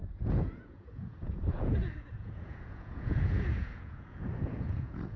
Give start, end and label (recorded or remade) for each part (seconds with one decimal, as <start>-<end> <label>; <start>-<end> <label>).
0.0-5.2 remade